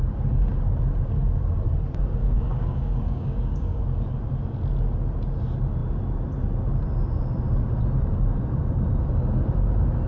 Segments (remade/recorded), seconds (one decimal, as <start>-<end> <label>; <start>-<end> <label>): 0.0-2.2 recorded; 2.2-3.8 remade; 3.8-10.1 recorded